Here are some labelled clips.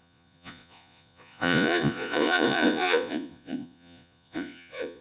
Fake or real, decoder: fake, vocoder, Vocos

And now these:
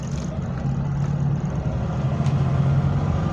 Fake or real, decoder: real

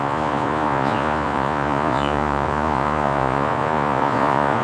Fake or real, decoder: fake, vocoder, Vocos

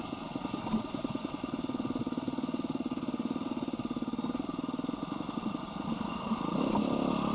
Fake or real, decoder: real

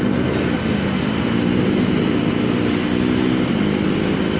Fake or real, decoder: real